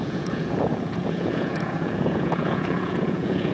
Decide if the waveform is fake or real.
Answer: fake